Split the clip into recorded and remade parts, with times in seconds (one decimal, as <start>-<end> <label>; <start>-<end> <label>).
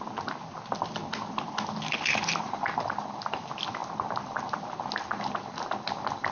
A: 0.0-6.3 recorded